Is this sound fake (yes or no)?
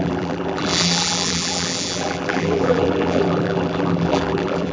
yes